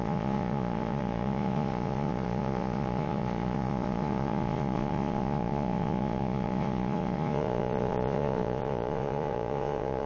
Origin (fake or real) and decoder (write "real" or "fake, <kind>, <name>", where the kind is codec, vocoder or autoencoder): fake, vocoder, Vocos